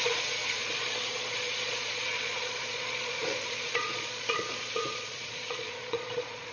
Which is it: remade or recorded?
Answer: remade